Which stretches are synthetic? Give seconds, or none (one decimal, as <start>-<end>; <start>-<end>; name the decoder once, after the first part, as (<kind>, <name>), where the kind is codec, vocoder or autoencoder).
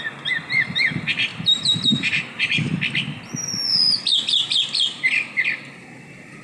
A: 0.0-2.7 (vocoder, BigVGAN v2); 5.8-6.4